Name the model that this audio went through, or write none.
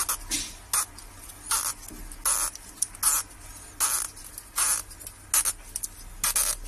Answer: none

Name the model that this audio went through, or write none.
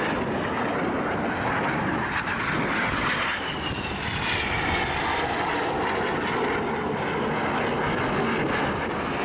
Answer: none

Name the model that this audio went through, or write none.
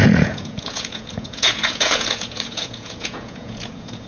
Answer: vocoder, Vocos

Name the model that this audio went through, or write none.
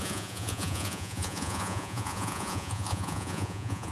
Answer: vocoder, Vocos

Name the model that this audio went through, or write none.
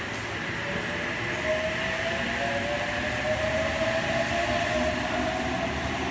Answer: none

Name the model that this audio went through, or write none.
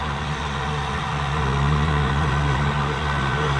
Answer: vocoder, Vocos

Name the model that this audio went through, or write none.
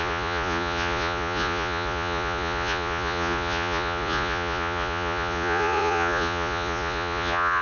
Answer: vocoder, Vocos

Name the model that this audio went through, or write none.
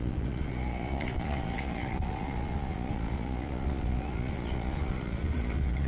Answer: vocoder, Vocos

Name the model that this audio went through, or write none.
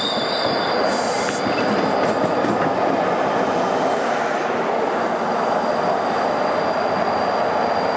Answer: none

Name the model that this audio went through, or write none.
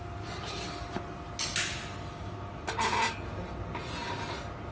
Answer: none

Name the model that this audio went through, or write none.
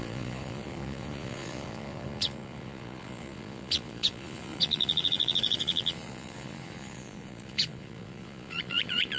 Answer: vocoder, Vocos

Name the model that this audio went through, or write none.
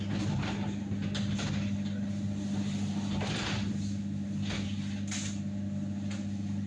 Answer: none